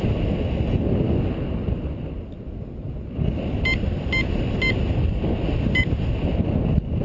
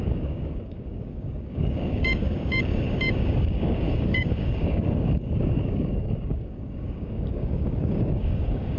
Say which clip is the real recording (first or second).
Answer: first